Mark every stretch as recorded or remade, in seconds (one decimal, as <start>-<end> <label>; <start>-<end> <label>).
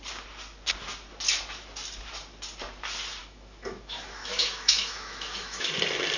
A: 0.0-3.2 recorded; 3.2-5.7 remade; 5.7-6.2 recorded